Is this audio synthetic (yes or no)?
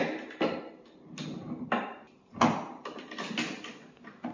no